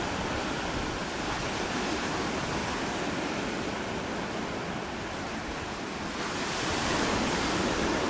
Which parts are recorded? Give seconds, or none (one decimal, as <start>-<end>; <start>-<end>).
0.0-8.1